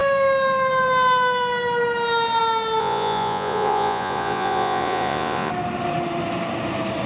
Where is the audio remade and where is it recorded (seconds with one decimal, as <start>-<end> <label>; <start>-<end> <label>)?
0.0-2.8 recorded; 2.8-5.5 remade; 5.5-7.1 recorded